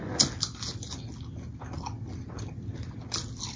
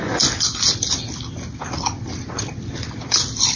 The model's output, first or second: second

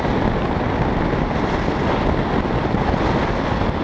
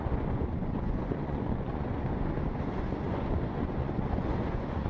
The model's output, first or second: second